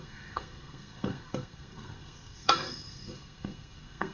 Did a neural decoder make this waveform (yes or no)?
yes